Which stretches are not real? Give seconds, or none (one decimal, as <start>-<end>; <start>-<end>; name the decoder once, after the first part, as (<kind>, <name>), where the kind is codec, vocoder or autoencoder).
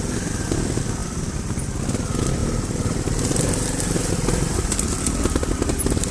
1.0-1.6 (vocoder, BigVGAN v2); 2.4-5.0